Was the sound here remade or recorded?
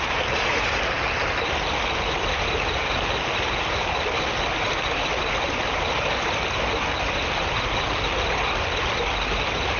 recorded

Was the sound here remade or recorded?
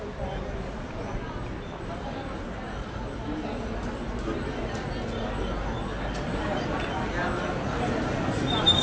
recorded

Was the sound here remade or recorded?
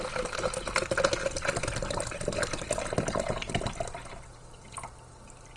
recorded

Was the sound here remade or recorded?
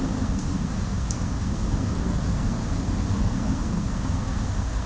remade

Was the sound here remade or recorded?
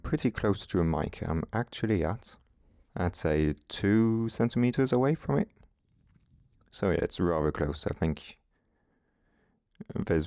recorded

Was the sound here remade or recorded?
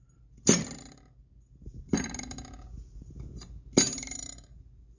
recorded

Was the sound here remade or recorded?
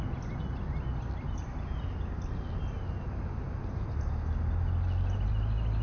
recorded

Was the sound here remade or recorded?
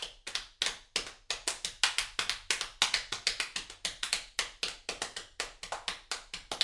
recorded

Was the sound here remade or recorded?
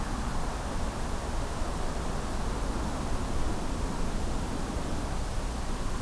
recorded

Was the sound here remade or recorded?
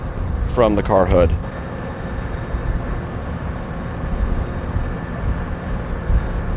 recorded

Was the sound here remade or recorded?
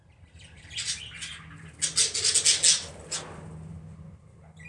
recorded